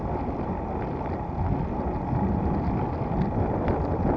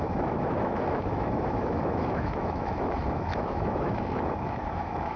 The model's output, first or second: second